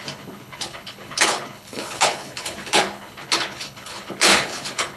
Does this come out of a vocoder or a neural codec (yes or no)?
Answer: yes